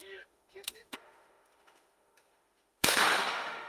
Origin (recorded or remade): remade